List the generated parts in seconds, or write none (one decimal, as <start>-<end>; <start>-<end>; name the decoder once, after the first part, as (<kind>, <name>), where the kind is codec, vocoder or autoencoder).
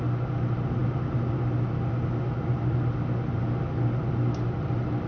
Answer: none